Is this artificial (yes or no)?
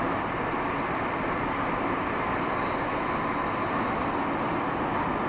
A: no